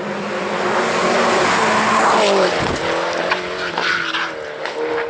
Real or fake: real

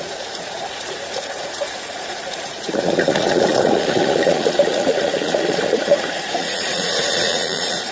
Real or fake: fake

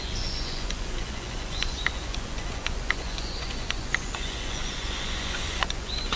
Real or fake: fake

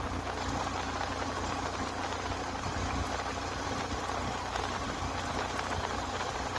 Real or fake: real